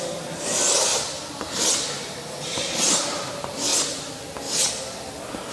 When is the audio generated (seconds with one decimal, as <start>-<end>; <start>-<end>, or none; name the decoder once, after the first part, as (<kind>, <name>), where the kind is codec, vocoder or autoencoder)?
none